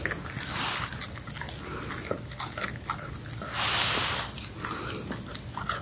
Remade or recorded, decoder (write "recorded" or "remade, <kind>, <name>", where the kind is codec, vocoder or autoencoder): recorded